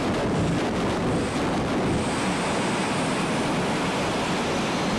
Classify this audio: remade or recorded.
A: remade